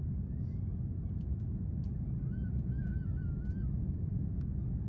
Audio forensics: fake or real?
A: real